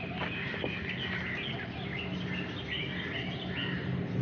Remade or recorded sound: recorded